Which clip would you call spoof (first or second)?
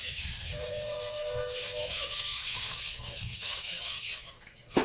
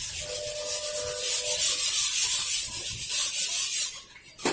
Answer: first